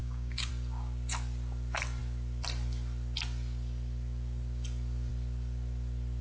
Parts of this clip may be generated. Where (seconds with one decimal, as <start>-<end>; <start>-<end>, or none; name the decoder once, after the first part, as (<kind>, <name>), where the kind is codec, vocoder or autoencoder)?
0.0-0.5 (codec, DAC)